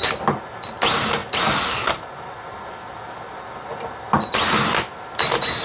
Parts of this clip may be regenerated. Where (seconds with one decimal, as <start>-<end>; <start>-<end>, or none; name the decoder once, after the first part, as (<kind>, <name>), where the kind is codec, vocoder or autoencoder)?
none